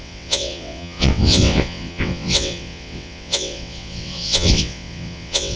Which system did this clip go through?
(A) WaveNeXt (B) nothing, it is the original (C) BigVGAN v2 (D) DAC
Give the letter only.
A